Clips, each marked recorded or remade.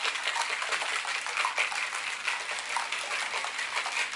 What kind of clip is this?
recorded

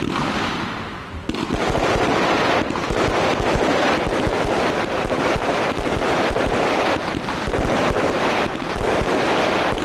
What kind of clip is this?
recorded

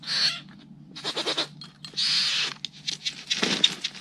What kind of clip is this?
recorded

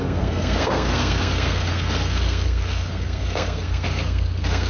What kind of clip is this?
remade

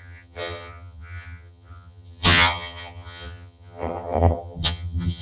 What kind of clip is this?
remade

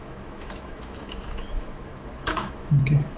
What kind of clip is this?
remade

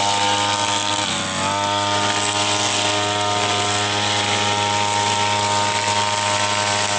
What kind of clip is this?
recorded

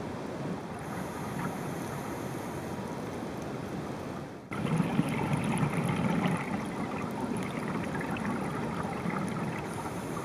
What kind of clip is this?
recorded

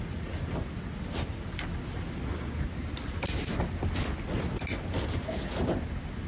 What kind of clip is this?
recorded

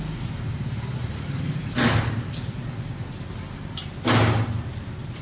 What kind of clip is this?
recorded